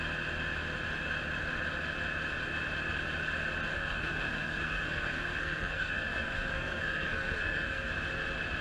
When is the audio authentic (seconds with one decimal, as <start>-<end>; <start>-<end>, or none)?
0.0-3.7; 7.9-8.6